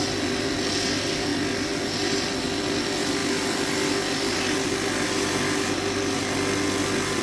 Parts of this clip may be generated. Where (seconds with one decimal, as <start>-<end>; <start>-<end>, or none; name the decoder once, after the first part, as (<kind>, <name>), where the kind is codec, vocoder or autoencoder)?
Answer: none